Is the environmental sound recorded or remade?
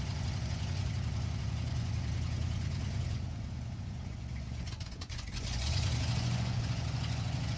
remade